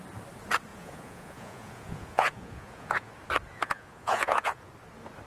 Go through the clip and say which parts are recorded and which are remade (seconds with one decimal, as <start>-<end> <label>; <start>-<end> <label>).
0.0-0.7 recorded; 0.7-3.1 remade; 3.1-3.5 recorded; 3.5-4.7 remade; 4.7-5.3 recorded